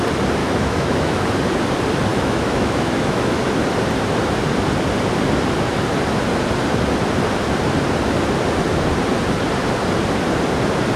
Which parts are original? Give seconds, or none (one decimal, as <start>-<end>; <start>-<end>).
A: 0.0-0.4; 1.2-2.1; 3.4-11.0